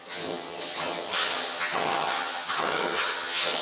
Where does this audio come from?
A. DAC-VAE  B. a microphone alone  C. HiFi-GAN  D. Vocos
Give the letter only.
C